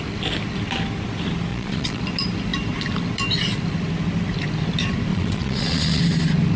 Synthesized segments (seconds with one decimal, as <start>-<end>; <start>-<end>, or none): 1.5-2.0; 5.1-6.0